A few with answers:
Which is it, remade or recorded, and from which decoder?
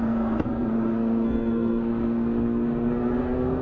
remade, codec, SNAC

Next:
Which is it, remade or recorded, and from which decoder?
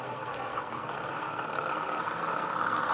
remade, codec, SNAC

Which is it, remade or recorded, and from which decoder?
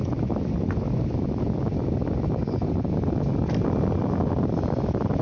recorded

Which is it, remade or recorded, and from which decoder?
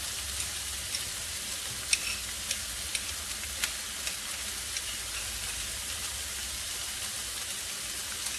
recorded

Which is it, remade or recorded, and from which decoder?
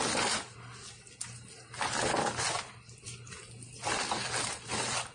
recorded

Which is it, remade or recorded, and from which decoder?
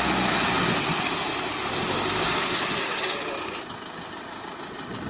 recorded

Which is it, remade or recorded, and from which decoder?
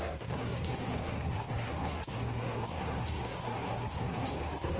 remade, codec, SNAC